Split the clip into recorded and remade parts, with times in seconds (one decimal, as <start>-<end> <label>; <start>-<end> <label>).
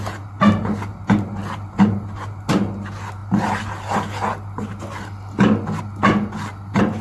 0.0-7.0 recorded